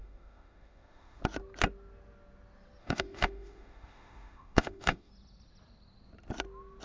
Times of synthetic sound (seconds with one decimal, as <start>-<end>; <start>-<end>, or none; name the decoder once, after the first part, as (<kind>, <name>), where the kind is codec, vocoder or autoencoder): 0.0-1.2 (autoencoder, DAC-VAE); 2.8-5.1